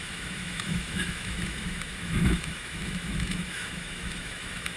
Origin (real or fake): fake